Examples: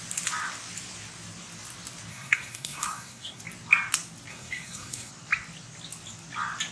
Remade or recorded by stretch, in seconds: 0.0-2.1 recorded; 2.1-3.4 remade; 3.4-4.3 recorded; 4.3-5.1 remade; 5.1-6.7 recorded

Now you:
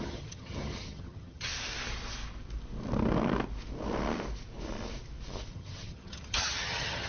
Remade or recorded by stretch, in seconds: 0.0-1.5 remade; 1.5-5.5 recorded; 5.5-7.1 remade